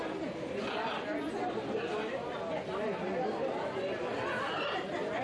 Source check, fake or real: real